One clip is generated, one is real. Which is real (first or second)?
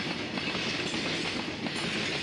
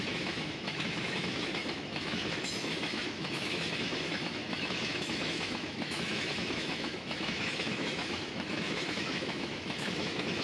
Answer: first